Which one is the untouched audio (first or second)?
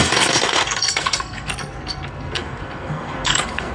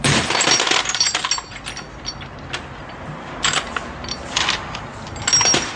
second